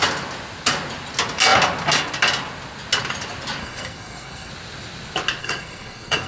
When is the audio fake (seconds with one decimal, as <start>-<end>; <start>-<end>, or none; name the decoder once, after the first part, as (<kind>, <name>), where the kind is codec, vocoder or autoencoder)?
3.6-4.5 (codec, SNAC); 5.4-6.3